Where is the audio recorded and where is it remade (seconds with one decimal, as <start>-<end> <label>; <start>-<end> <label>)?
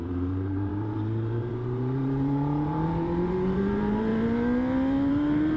0.0-4.1 remade; 4.1-5.1 recorded; 5.1-5.6 remade